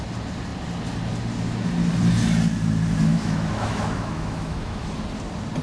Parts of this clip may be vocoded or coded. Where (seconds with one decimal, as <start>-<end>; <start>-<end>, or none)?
3.1-4.9